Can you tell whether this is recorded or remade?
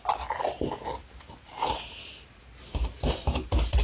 recorded